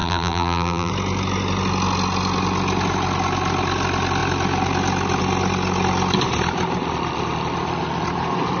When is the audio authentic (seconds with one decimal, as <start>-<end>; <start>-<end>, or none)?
0.9-8.6